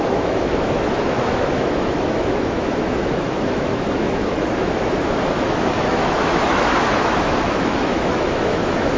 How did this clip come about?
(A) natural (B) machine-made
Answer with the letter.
B